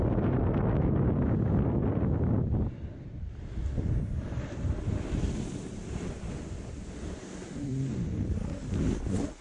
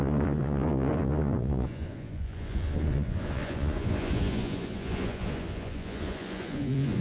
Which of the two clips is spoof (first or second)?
second